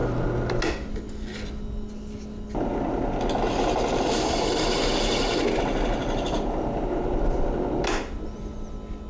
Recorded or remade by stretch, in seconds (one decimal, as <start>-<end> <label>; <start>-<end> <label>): 0.0-9.1 recorded